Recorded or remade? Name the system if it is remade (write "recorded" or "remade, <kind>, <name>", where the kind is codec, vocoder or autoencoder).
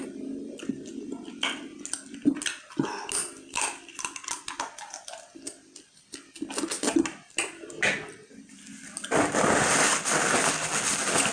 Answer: recorded